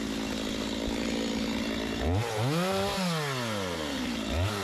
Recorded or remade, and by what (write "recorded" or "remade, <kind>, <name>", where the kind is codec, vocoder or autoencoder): recorded